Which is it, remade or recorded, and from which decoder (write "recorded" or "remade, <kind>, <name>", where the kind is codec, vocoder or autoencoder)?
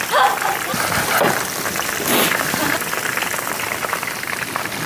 recorded